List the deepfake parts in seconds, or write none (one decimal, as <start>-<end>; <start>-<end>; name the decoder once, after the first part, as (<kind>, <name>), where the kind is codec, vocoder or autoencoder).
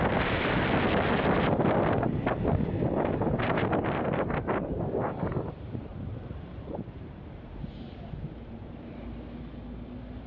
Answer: 5.9-9.0 (vocoder, BigVGAN v2)